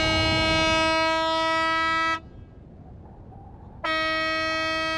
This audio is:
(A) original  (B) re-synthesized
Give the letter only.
A